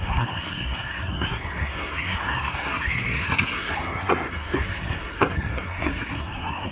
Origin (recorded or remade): remade